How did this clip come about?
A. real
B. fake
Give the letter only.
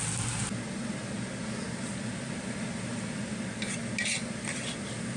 A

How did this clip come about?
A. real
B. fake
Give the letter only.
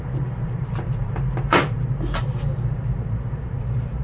B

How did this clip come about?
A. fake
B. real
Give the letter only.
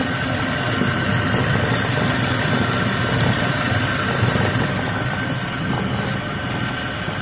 B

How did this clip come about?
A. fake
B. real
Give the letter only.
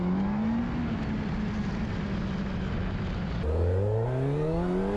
B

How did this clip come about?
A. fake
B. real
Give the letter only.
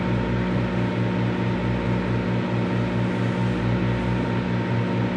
B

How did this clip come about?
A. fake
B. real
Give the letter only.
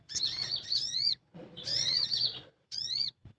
A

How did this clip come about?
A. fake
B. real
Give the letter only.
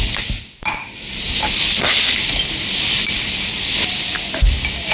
B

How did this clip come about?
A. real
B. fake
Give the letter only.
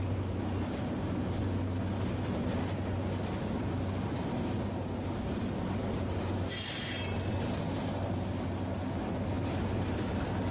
A